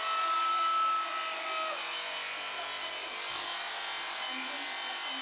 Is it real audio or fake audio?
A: real